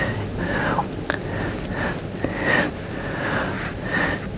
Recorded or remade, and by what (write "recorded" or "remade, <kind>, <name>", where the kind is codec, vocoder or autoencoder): recorded